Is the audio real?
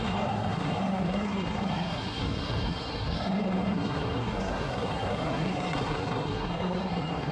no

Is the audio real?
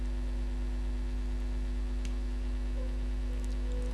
yes